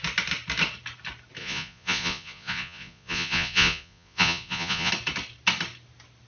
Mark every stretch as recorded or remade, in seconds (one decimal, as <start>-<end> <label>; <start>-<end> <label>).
0.0-1.4 recorded; 1.4-4.9 remade; 4.9-6.3 recorded